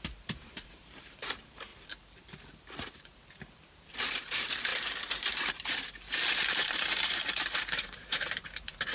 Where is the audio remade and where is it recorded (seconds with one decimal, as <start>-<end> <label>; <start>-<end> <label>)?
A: 0.0-1.7 remade; 1.7-2.9 recorded; 2.9-8.9 remade